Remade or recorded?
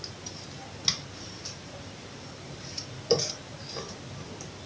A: recorded